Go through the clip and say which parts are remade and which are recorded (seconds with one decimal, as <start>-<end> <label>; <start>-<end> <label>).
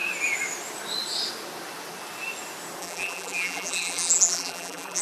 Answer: 0.0-2.8 recorded; 2.8-5.0 remade